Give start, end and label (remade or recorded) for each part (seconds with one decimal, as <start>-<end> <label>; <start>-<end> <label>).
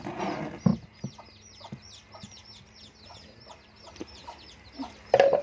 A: 0.0-5.4 recorded